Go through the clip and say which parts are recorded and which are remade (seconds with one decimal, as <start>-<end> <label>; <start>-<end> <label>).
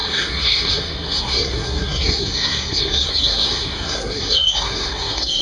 0.0-5.4 remade